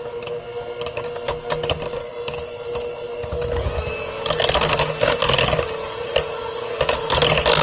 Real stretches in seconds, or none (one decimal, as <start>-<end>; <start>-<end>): 0.0-7.6